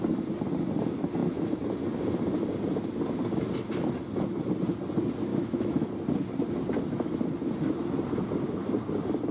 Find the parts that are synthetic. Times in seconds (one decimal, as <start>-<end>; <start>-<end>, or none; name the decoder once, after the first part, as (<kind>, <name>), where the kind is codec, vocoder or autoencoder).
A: 5.3-5.9 (autoencoder, DAC-VAE)